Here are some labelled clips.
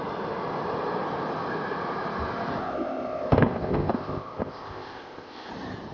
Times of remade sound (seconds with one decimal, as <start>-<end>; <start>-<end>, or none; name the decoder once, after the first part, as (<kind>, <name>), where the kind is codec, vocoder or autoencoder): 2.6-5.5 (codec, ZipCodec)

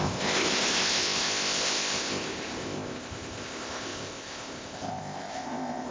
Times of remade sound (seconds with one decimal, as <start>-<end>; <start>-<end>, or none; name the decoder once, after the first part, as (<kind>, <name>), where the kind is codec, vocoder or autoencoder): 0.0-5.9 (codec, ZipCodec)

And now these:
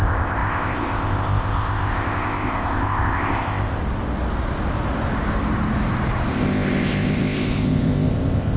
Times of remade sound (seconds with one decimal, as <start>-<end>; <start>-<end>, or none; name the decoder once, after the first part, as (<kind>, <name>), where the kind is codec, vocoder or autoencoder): 0.0-3.8 (codec, ZipCodec); 6.3-8.6